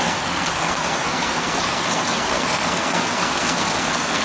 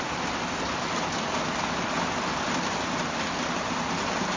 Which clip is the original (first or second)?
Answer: second